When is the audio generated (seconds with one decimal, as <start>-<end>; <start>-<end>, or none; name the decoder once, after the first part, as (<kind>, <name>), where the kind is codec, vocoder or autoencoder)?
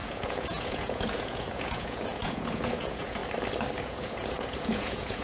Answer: 0.0-3.2 (vocoder, Vocos); 3.8-5.2